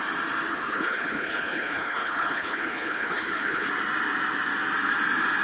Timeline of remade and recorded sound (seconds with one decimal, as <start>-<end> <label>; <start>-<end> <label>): 0.0-0.5 recorded; 0.5-3.7 remade; 3.7-5.4 recorded